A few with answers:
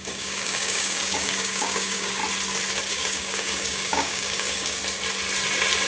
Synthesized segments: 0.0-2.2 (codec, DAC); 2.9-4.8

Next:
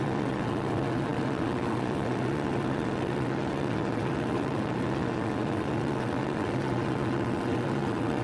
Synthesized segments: 0.0-8.2 (vocoder, WaveNeXt)